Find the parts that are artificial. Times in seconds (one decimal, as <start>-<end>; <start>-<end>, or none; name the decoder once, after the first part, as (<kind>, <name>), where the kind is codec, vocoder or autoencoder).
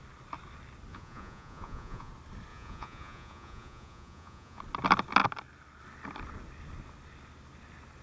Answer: 0.9-2.1 (vocoder, Vocos); 2.5-4.6